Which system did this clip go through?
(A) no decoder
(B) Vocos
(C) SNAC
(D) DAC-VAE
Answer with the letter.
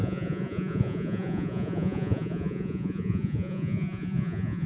B